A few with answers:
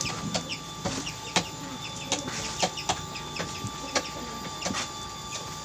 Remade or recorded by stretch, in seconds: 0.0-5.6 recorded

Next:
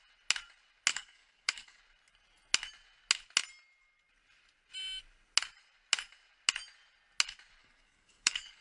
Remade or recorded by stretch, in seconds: 0.0-0.9 recorded; 0.9-1.8 remade; 1.8-7.6 recorded; 7.6-8.6 remade

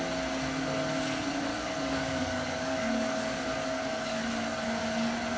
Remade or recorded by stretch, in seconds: 0.0-1.5 recorded; 1.5-4.3 remade; 4.3-5.4 recorded

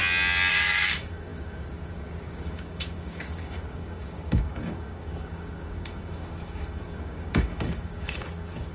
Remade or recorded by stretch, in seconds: 0.0-0.5 recorded; 0.5-8.7 remade

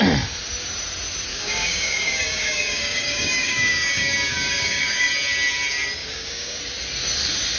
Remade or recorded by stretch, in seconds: 0.0-1.3 recorded; 1.3-5.1 remade; 5.1-6.0 recorded; 6.0-6.6 remade; 6.6-7.6 recorded

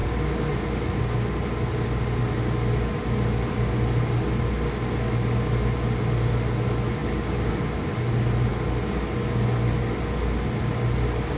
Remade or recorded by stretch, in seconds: 0.0-11.4 recorded

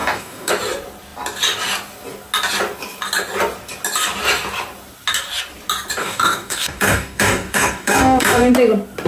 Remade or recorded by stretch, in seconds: 0.0-0.5 remade; 0.5-6.0 recorded; 6.0-8.5 remade; 8.5-9.1 recorded

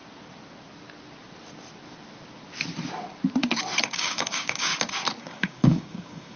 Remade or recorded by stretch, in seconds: 0.0-3.8 recorded; 3.8-4.7 remade; 4.7-5.2 recorded; 5.2-6.4 remade